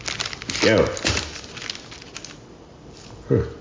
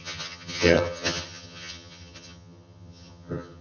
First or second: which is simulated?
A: second